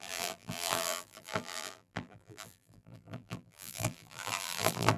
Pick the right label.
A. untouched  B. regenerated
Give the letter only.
B